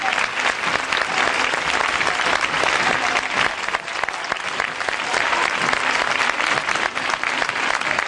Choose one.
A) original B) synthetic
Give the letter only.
A